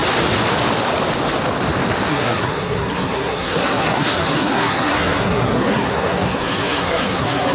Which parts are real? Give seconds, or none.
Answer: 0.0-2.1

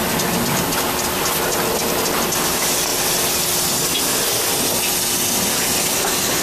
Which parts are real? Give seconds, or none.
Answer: 0.0-6.4

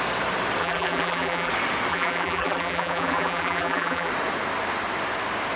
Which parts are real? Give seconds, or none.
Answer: 0.0-0.6; 1.5-1.9; 4.1-5.6

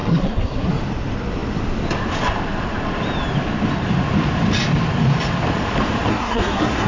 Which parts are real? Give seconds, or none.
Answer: 0.7-6.1

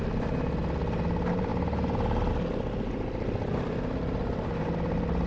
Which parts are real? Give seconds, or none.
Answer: 0.0-5.3

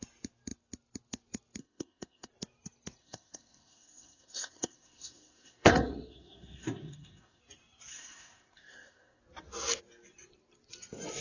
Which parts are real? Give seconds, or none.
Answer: 0.0-1.6; 2.3-3.0; 7.4-7.9; 9.2-11.2

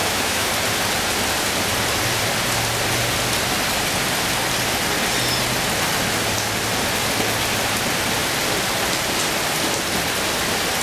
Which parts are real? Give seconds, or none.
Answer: 0.5-10.8